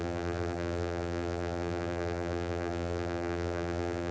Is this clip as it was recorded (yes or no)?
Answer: no